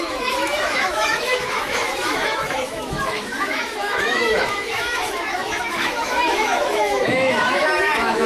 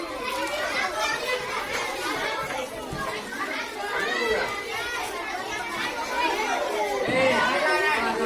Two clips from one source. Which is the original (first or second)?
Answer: second